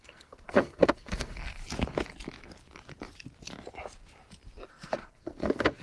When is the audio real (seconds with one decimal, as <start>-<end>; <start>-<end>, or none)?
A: 1.6-4.7